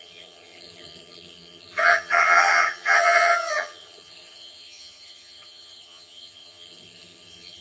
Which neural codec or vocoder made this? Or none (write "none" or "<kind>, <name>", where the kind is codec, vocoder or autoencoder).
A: vocoder, HiFi-GAN